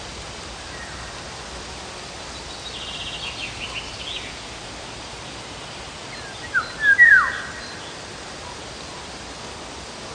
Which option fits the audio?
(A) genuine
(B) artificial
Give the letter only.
A